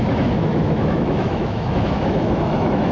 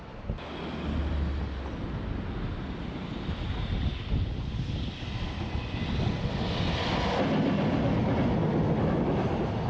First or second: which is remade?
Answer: first